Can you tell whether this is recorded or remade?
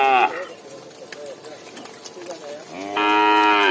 recorded